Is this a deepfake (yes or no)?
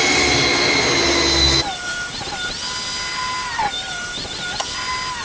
no